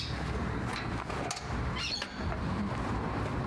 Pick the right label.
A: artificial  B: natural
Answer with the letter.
B